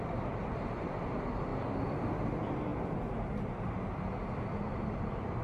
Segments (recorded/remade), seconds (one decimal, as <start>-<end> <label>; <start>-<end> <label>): 0.0-1.5 remade; 1.5-2.1 recorded; 2.1-2.7 remade; 2.7-5.4 recorded

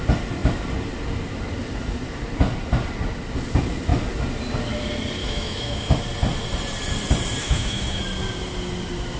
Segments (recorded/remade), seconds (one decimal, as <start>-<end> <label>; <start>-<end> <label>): 0.0-5.2 recorded; 5.2-6.0 remade; 6.0-7.4 recorded; 7.4-8.0 remade; 8.0-9.2 recorded

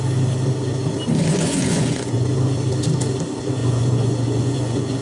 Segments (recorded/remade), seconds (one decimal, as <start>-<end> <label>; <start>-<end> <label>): 0.0-1.3 recorded; 1.3-2.3 remade; 2.3-3.6 recorded; 3.6-5.0 remade

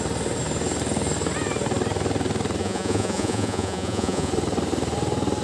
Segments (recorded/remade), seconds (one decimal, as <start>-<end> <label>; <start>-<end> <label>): 0.0-2.6 recorded; 2.6-4.3 remade; 4.3-5.4 recorded